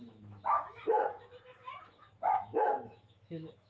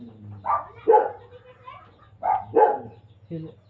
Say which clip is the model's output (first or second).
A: first